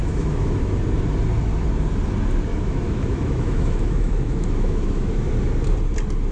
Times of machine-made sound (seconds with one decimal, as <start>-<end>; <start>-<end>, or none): 0.0-0.6; 2.5-5.3